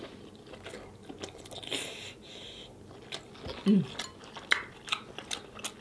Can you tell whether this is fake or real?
real